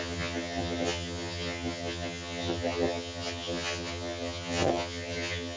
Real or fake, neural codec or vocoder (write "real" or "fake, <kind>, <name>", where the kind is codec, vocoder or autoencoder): fake, vocoder, HiFi-GAN